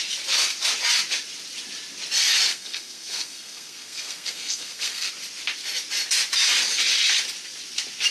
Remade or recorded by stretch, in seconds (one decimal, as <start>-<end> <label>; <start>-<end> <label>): 0.0-2.5 recorded; 2.5-5.1 remade; 5.1-8.1 recorded